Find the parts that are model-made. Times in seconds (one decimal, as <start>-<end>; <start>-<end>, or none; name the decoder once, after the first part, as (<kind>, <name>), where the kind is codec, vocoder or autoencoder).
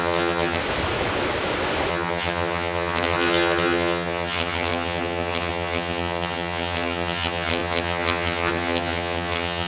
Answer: 0.0-0.6 (vocoder, HiFi-GAN); 1.9-9.7